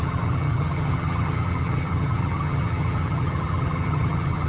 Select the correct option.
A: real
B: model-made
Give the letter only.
B